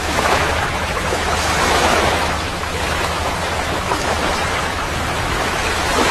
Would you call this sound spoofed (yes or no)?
yes